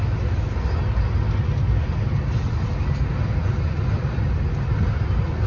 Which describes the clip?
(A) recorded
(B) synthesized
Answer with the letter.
A